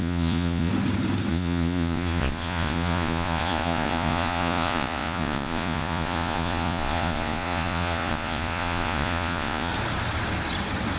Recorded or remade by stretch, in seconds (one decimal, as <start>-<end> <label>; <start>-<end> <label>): 0.0-0.7 remade; 0.7-1.3 recorded; 1.3-9.7 remade; 9.7-11.0 recorded